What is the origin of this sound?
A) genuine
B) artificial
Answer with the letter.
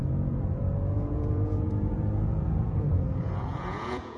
B